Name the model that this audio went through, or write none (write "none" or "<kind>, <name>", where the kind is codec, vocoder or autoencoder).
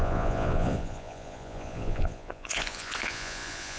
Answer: vocoder, Vocos